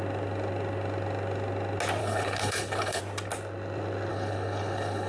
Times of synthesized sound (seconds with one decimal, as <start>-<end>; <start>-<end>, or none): 2.0-3.0; 4.1-5.1